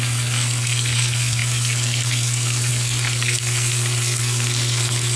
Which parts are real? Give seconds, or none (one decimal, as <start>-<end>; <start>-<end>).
none